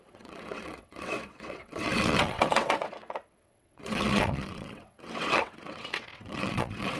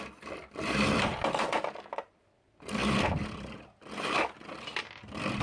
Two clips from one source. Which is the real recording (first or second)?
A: second